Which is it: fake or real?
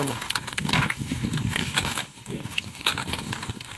fake